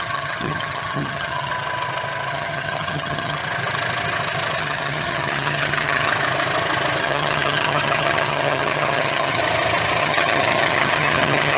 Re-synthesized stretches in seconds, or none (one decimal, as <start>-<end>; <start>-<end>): 0.0-1.5; 2.3-3.4; 4.6-6.1; 7.0-9.4; 10.0-11.6